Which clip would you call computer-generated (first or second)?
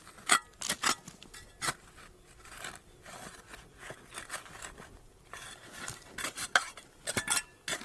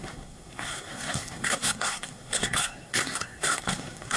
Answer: second